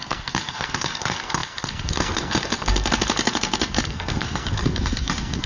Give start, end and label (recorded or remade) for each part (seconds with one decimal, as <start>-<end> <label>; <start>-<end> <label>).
0.0-5.5 remade